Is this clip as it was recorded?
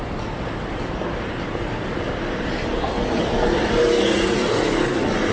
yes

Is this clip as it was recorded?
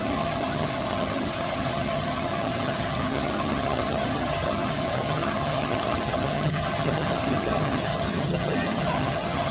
no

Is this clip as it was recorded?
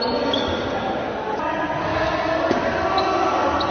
yes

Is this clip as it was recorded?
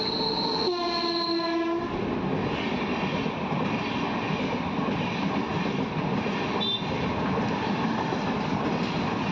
yes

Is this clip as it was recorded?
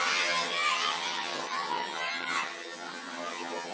no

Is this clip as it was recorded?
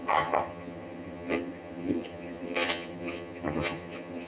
no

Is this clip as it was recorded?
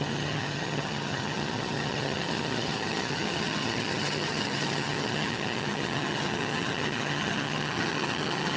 no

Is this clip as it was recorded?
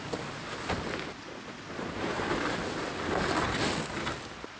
yes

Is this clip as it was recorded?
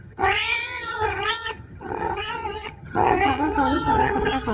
no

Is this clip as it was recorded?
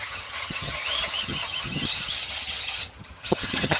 no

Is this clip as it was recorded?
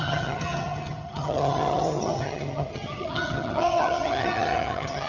no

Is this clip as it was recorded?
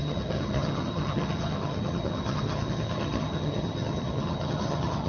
no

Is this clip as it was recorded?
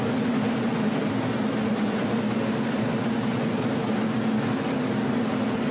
yes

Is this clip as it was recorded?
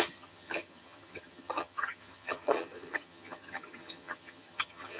no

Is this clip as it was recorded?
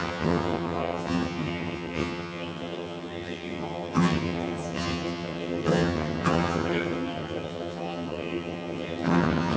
no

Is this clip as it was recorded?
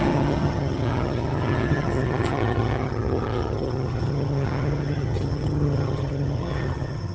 no